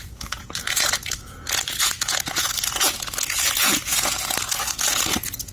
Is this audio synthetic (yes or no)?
yes